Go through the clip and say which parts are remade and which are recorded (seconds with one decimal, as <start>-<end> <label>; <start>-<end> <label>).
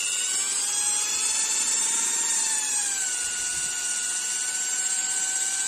0.0-5.7 recorded